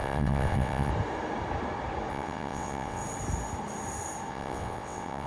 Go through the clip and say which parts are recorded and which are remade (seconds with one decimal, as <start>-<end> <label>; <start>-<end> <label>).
0.0-0.9 remade; 0.9-2.1 recorded; 2.1-3.0 remade; 3.0-4.3 recorded; 4.3-5.3 remade